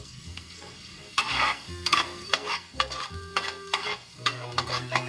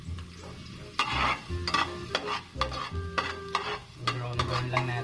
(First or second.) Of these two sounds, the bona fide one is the second